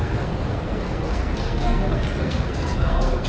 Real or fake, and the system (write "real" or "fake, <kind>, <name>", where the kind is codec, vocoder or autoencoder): fake, codec, SNAC